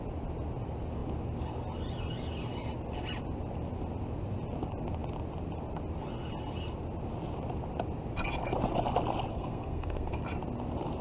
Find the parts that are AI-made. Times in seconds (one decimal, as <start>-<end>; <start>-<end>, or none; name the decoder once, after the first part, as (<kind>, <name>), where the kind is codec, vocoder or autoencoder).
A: 9.3-10.2 (codec, SNAC)